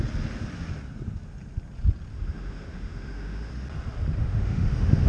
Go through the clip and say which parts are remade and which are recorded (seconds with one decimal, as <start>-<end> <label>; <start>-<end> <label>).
0.0-2.1 recorded; 2.1-3.5 remade; 3.5-4.2 recorded; 4.2-5.1 remade